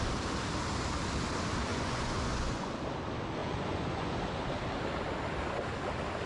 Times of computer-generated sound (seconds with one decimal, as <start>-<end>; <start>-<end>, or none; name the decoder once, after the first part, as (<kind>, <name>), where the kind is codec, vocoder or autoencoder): 1.7-2.7 (vocoder, Vocos); 3.4-4.2